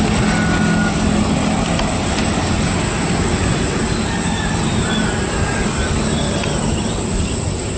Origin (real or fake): real